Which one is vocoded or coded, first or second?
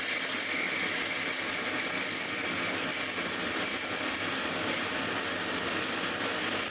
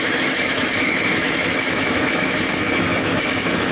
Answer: second